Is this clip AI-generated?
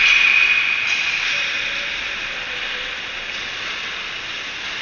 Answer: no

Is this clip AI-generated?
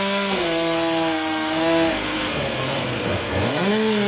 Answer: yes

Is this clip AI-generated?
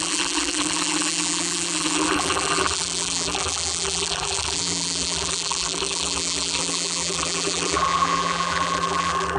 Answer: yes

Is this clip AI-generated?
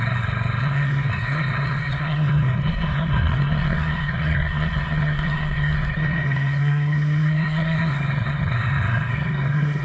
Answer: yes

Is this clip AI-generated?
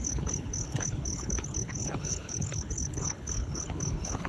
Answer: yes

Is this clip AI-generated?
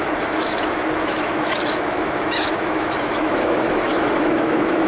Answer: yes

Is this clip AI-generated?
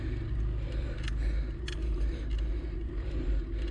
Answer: no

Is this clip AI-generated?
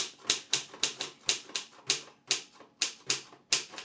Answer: no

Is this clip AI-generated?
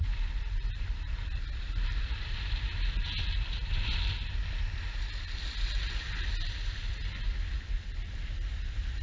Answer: no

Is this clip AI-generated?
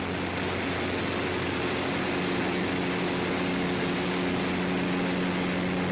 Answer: no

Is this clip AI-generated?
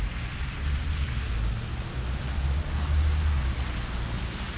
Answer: no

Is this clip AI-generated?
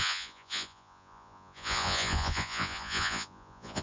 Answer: yes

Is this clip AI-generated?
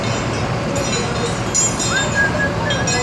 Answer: no